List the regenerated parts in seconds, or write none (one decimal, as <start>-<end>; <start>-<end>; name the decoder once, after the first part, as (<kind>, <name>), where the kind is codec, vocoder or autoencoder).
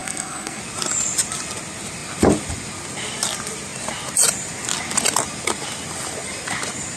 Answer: 0.0-0.6 (codec, SNAC)